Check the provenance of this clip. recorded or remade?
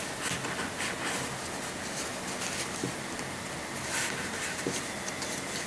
recorded